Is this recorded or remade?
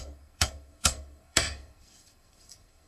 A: remade